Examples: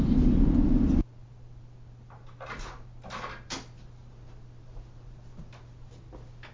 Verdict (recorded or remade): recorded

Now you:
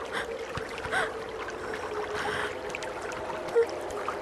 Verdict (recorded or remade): recorded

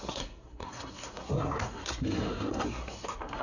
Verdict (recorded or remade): remade